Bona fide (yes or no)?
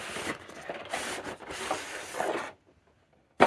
yes